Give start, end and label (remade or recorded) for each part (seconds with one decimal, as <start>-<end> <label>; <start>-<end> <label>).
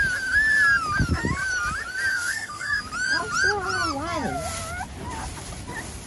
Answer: 0.0-2.1 recorded; 2.1-2.8 remade; 2.8-6.1 recorded